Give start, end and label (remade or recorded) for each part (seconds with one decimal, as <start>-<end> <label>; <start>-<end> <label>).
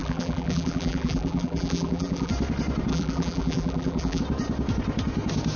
0.0-2.3 remade; 2.3-2.9 recorded; 2.9-4.2 remade; 4.2-5.6 recorded